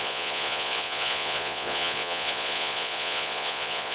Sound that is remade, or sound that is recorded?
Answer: remade